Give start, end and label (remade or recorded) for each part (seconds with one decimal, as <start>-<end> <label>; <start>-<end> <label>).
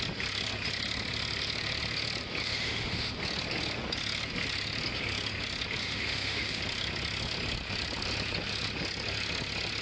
0.0-2.4 recorded; 2.4-3.1 remade; 3.1-5.8 recorded; 5.8-6.6 remade; 6.6-9.8 recorded